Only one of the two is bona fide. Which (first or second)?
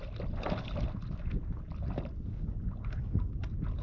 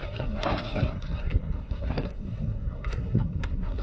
first